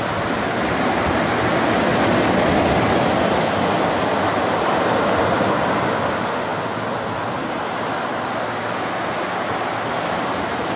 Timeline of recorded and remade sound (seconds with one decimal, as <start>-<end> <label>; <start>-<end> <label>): 0.0-10.8 recorded